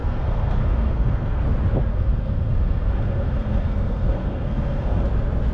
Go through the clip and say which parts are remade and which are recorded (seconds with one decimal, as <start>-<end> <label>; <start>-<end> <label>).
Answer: 0.0-1.4 remade; 1.4-1.9 recorded; 1.9-5.0 remade; 5.0-5.5 recorded